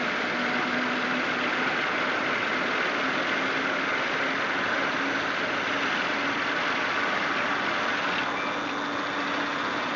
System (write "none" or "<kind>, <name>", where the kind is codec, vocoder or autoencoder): none